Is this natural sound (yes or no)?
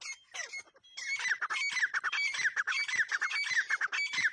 yes